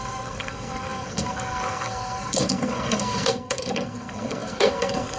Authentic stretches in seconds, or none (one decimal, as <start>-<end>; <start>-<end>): none